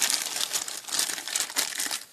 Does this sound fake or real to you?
real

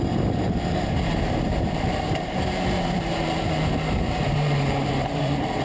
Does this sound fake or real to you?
fake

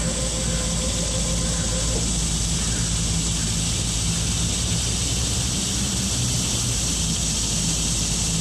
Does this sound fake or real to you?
fake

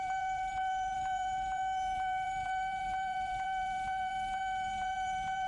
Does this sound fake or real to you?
fake